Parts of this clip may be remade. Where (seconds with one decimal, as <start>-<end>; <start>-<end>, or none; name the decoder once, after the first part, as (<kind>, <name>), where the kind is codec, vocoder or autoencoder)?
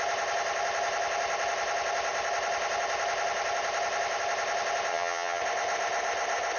4.9-5.4 (vocoder, HiFi-GAN)